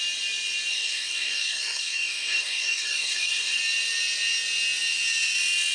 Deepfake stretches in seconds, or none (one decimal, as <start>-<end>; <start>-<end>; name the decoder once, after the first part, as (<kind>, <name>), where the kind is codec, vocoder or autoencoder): 0.7-3.6 (codec, DAC)